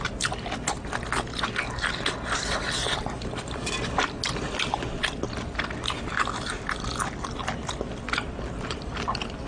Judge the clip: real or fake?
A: real